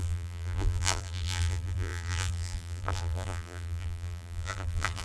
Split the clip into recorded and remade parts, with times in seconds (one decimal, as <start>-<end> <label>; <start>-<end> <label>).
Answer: 0.0-5.0 remade

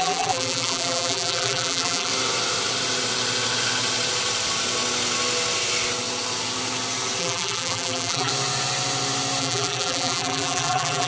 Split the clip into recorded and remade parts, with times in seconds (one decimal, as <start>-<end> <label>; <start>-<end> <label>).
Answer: 0.0-2.1 remade; 2.1-7.2 recorded; 7.2-8.3 remade; 8.3-9.4 recorded; 9.4-11.1 remade

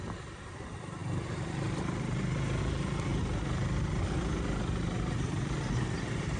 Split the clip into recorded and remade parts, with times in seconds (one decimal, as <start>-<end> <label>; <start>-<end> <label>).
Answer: 0.0-3.1 remade; 3.1-4.8 recorded; 4.8-6.4 remade

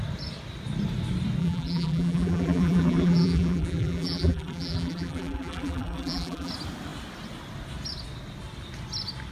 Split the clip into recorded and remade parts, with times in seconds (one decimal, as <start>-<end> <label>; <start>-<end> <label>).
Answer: 0.0-1.4 recorded; 1.4-6.5 remade; 6.5-9.3 recorded

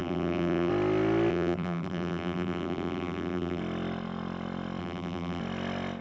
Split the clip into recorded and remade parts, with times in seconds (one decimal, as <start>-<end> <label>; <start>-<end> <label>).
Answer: 0.0-0.7 remade; 0.7-1.3 recorded; 1.3-3.6 remade; 3.6-4.8 recorded; 4.8-5.4 remade; 5.4-6.0 recorded